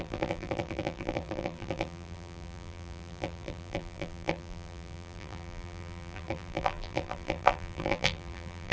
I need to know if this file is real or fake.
fake